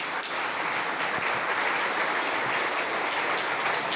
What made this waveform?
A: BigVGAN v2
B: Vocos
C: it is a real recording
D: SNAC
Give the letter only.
C